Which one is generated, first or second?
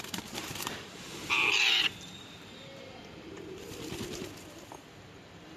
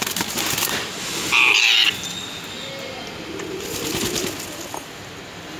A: first